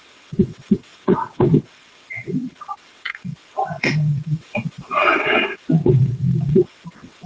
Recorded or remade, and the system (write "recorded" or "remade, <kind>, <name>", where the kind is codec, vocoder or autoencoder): remade, vocoder, WaveNeXt